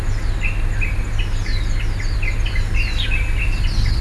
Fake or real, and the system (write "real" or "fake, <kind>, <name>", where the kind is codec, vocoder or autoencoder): real